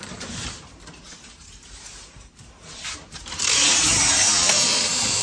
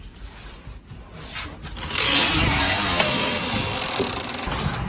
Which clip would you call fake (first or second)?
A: first